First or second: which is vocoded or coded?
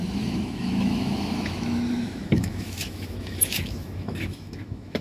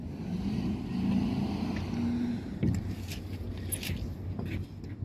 first